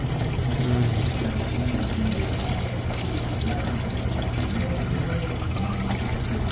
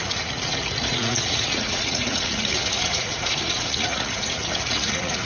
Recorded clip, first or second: first